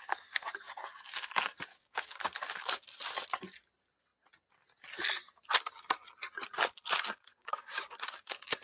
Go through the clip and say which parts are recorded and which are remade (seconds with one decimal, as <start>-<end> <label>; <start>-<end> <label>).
0.0-1.7 recorded; 1.7-2.2 remade; 2.2-8.6 recorded